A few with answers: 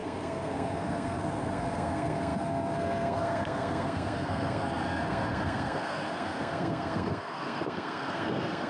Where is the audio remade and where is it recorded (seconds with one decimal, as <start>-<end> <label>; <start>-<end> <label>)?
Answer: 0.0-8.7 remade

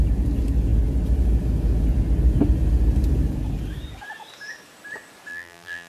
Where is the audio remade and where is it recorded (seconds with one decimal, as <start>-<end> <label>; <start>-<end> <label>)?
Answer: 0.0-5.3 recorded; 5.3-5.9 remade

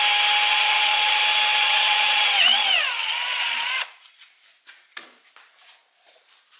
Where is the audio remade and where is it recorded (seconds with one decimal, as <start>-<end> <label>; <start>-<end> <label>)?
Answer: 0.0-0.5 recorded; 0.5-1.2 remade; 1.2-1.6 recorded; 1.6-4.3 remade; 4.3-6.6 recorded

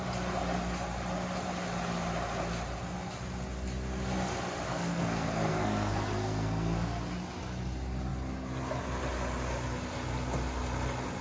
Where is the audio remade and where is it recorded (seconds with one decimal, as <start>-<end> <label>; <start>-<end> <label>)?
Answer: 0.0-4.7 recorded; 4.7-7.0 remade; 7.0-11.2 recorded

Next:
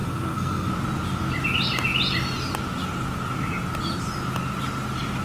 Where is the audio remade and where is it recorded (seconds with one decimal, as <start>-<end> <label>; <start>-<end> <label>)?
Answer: 0.0-0.7 remade; 0.7-5.2 recorded